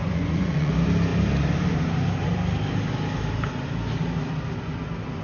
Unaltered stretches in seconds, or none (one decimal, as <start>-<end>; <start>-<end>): 0.7-5.2

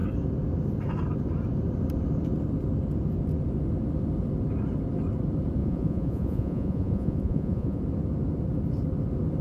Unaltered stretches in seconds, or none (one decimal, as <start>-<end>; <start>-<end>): 0.0-5.6; 7.8-9.4

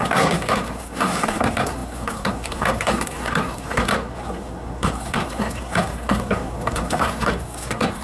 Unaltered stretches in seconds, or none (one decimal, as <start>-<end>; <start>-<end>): none

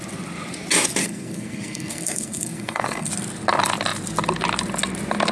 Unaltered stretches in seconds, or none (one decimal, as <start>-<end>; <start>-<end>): 0.0-1.0; 3.1-5.3

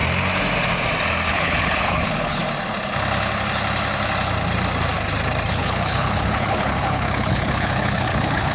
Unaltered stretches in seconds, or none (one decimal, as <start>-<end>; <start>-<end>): 0.0-1.3; 2.4-5.5

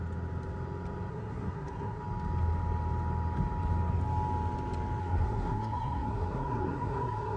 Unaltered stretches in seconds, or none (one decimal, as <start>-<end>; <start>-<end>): 0.0-1.1; 2.0-5.0

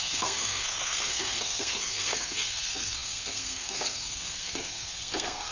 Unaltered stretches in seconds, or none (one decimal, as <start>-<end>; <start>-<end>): none

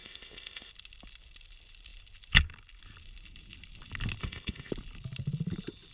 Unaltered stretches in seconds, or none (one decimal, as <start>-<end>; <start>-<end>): 0.7-4.2; 4.7-5.9